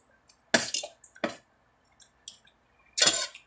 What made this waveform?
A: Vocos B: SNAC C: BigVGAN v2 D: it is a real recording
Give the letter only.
D